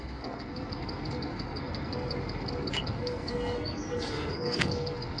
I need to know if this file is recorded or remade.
remade